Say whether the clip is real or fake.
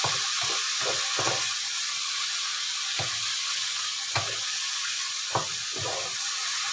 real